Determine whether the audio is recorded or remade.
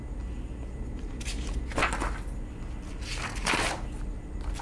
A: recorded